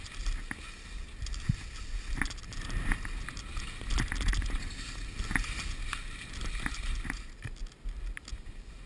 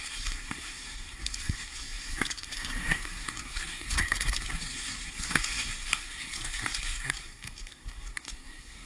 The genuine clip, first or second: first